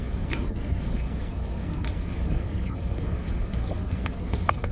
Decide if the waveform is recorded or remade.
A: remade